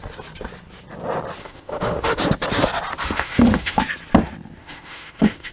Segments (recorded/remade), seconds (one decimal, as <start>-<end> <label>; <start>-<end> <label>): 0.0-1.4 recorded; 1.4-2.2 remade; 2.2-3.0 recorded; 3.0-3.8 remade; 3.8-4.6 recorded; 4.6-5.5 remade